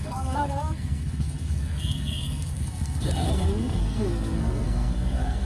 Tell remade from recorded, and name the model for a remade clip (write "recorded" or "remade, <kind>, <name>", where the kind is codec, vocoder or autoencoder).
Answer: remade, codec, SNAC